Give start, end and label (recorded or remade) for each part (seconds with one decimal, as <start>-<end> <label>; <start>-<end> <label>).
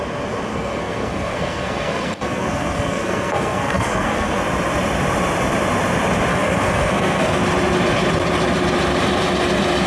0.0-0.5 recorded; 0.5-4.4 remade; 4.4-6.3 recorded; 6.3-7.4 remade; 7.4-9.9 recorded